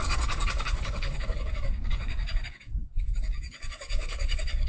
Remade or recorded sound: remade